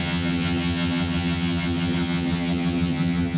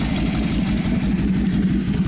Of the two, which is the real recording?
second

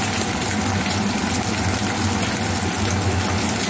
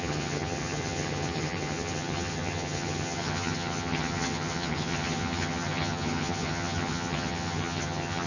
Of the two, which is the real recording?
first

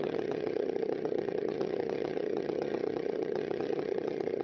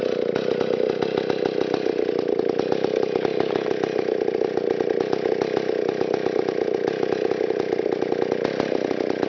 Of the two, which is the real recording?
second